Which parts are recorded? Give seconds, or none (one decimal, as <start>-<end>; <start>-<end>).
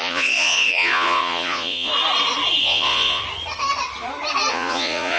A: 1.9-2.6; 3.2-4.5